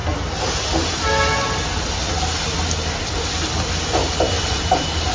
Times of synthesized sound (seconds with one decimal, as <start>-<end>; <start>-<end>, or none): none